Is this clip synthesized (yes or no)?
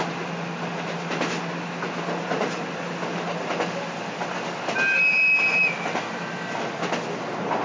no